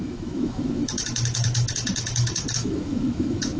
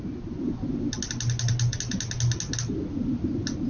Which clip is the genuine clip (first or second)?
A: second